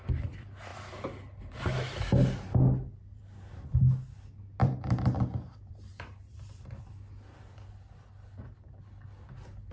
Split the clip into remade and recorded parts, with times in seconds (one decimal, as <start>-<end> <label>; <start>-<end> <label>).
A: 0.0-4.6 recorded; 4.6-6.8 remade; 6.8-9.7 recorded